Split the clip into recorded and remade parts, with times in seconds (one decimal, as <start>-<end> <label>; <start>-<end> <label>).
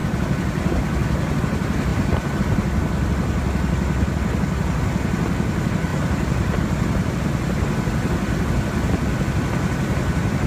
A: 0.0-1.9 recorded; 1.9-2.4 remade; 2.4-5.9 recorded; 5.9-6.6 remade; 6.6-10.5 recorded